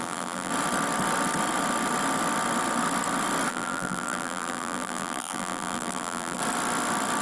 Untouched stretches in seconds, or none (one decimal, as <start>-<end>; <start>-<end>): 0.5-3.5; 6.4-7.2